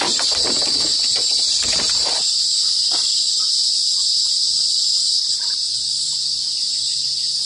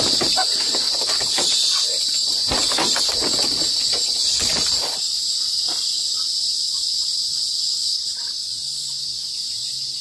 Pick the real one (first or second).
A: second